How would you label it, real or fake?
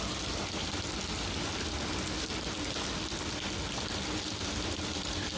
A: real